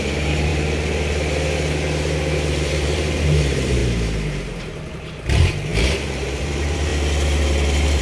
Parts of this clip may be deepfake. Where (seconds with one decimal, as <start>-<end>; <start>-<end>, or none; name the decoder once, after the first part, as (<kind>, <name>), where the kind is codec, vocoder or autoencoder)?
0.0-0.5 (vocoder, BigVGAN v2); 2.5-3.8; 4.9-6.9